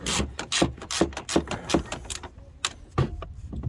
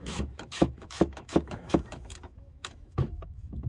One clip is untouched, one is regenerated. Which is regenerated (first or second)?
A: second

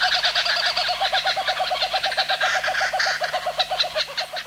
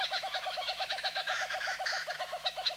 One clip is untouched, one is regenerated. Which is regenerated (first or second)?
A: second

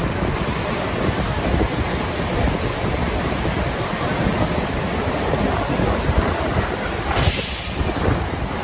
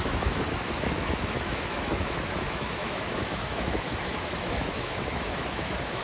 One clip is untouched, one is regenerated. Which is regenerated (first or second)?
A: second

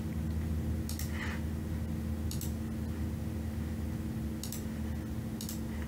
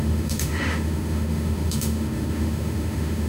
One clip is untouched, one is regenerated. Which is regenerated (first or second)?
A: second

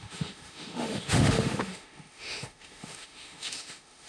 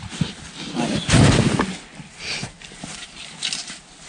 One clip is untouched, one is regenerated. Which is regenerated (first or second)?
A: first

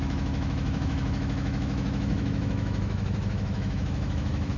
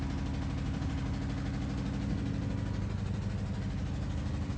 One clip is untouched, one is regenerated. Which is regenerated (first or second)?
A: first